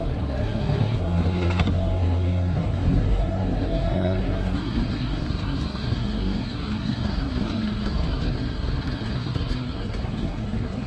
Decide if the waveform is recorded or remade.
remade